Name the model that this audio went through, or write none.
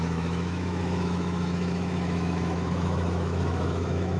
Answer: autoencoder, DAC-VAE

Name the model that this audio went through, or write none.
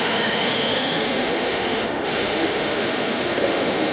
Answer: autoencoder, DAC-VAE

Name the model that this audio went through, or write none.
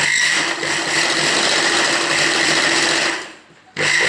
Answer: none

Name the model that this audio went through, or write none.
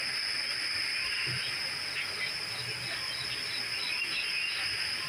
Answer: none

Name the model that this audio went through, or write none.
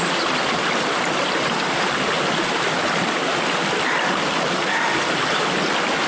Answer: none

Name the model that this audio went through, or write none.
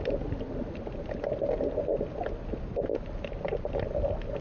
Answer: none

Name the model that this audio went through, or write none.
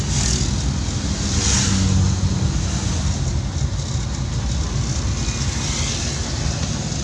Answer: none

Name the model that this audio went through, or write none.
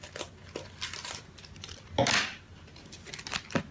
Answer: none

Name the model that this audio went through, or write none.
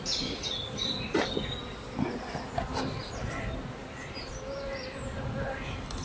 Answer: none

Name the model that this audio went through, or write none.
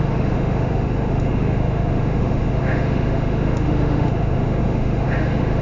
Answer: autoencoder, DAC-VAE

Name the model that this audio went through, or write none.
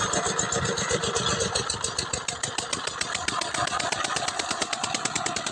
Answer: none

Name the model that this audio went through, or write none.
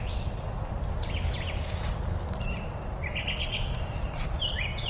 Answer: none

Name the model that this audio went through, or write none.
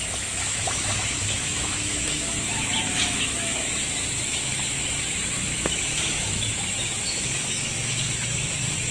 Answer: autoencoder, DAC-VAE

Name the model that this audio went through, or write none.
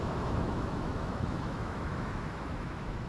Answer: autoencoder, DAC-VAE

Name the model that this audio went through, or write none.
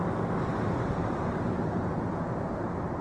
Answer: none